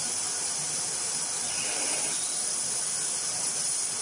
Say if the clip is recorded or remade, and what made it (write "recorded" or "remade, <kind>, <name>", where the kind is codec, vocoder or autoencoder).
recorded